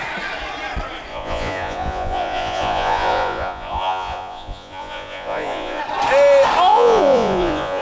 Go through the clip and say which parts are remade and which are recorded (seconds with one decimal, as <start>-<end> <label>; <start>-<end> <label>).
0.0-1.1 recorded; 1.1-5.8 remade; 5.8-6.7 recorded; 6.7-7.8 remade